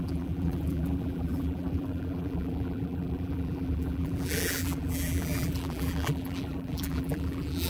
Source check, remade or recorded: remade